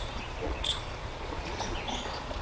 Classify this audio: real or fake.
fake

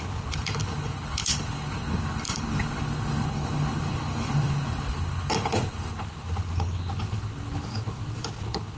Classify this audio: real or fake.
fake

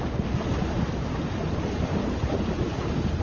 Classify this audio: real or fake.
real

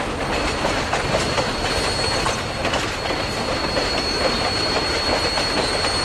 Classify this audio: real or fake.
fake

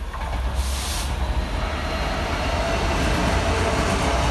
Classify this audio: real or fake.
real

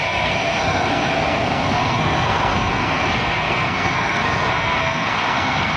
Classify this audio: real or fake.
fake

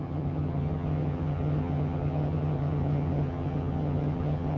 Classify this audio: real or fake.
fake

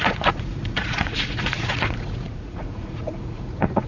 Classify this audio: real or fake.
fake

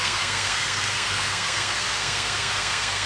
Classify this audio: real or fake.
fake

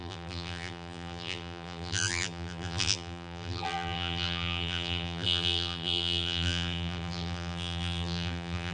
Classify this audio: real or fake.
fake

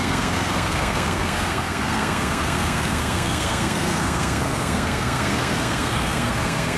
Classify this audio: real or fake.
fake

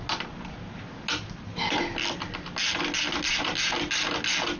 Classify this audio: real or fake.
real